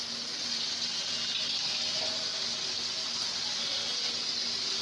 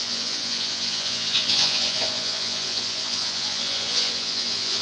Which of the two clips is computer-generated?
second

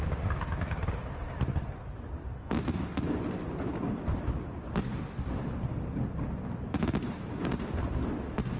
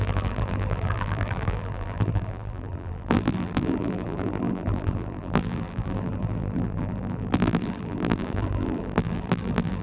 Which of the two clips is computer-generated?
second